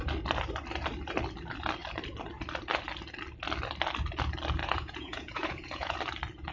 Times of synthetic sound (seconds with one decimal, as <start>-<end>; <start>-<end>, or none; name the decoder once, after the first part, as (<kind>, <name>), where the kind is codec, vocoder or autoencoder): 4.6-6.0 (vocoder, Vocos)